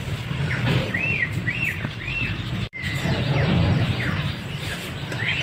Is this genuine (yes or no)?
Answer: no